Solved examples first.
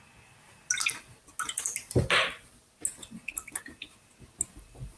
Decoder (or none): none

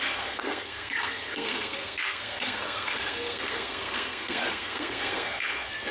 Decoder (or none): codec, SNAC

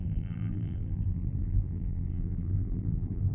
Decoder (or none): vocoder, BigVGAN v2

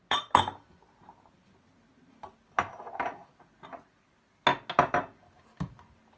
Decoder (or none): none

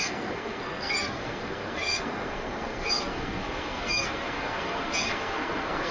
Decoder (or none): codec, SNAC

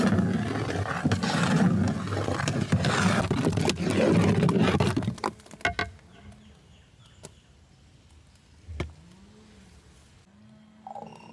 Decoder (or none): none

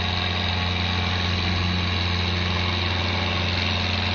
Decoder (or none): none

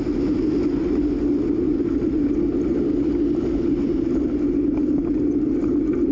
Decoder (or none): none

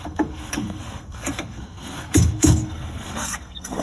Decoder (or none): codec, SNAC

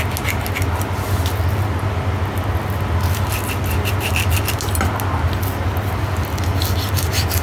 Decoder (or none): none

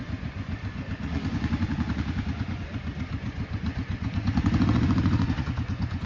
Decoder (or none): vocoder, Vocos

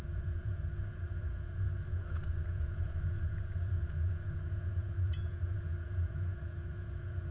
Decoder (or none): vocoder, Vocos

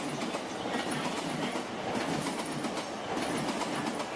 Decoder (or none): none